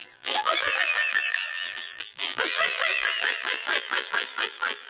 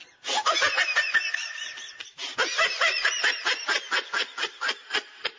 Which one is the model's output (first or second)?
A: first